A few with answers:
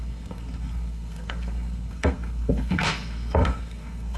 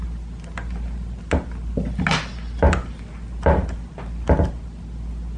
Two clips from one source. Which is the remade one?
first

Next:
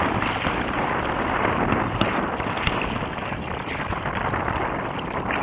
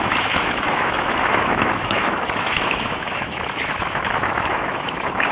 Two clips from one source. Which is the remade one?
second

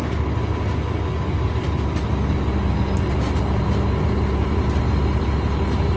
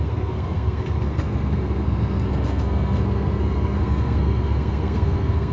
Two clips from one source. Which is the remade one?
second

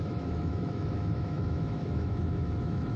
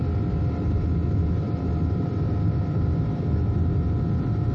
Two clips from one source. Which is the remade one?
first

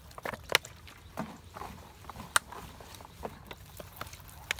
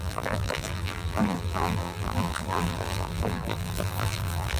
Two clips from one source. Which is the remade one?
second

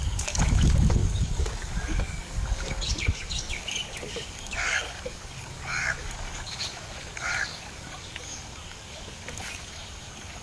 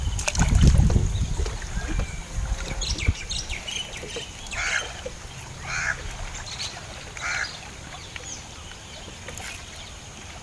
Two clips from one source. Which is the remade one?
first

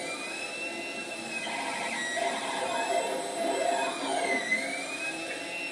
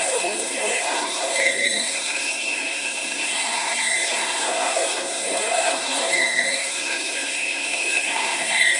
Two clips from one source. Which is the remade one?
second